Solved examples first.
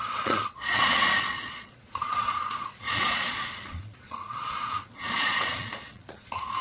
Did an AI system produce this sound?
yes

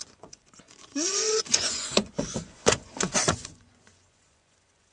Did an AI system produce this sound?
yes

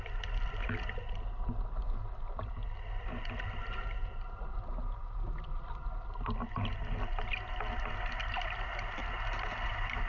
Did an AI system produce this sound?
no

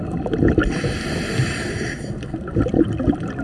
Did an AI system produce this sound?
no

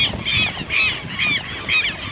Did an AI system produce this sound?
no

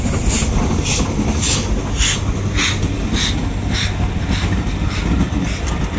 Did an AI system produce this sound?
no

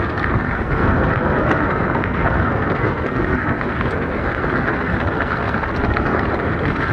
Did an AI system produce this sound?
yes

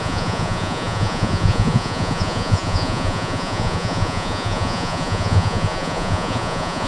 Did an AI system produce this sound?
yes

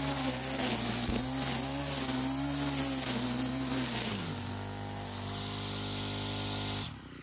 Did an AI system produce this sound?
no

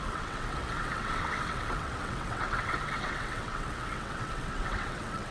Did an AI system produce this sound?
yes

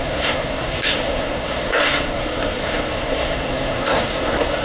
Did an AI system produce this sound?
yes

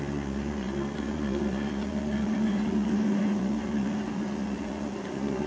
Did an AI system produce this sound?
yes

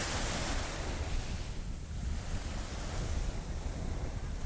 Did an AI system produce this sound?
no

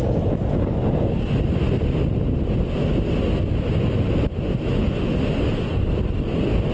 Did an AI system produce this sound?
no